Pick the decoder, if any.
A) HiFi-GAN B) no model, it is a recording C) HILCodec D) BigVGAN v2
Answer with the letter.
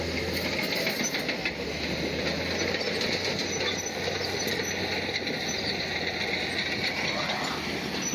B